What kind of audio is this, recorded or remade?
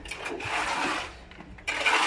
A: recorded